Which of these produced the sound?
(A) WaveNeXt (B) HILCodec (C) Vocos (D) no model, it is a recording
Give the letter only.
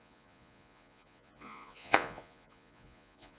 C